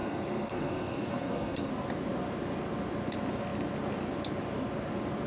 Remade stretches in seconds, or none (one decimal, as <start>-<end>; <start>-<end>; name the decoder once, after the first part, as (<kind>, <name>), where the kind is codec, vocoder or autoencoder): 0.0-1.7 (codec, SNAC)